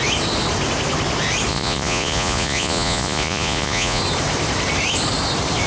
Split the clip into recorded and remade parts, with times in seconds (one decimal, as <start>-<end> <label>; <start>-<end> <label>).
0.0-1.5 recorded; 1.5-4.0 remade; 4.0-5.7 recorded